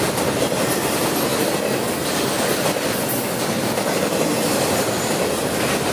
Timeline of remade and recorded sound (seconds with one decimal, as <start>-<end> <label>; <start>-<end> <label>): 0.0-5.9 recorded